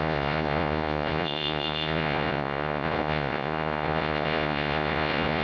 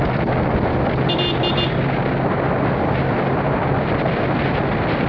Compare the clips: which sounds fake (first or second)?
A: first